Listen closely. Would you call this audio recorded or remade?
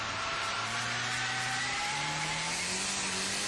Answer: recorded